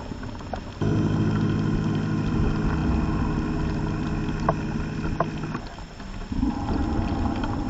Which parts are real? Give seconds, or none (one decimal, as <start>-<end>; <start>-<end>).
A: 0.0-7.7